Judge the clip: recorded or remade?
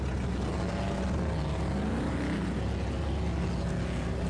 recorded